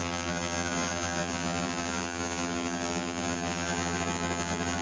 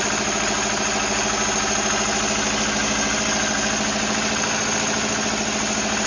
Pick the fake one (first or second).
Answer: first